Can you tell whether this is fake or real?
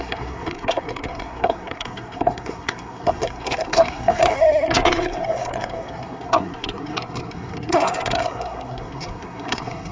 fake